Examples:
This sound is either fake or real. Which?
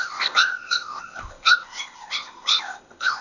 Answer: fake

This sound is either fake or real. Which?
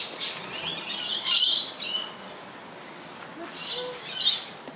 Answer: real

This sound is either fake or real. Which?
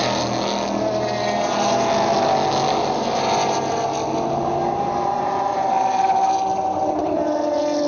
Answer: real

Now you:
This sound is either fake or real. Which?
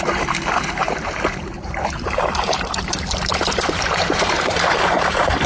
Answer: fake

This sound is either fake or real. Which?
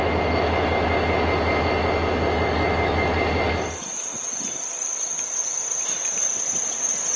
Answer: real